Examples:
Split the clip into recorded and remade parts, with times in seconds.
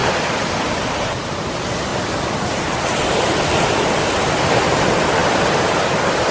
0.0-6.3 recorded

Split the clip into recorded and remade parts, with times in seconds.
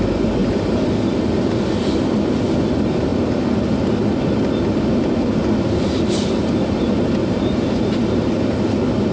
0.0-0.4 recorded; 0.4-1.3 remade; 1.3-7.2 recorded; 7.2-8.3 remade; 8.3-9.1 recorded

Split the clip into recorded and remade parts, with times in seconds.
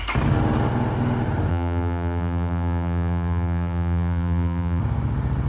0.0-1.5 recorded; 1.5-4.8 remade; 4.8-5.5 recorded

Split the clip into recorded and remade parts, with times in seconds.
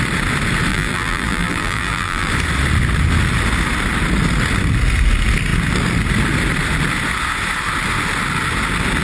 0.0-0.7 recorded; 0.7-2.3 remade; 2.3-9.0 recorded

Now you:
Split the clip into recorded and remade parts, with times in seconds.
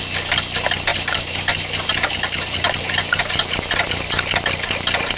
0.0-0.9 recorded; 0.9-3.7 remade; 3.7-5.2 recorded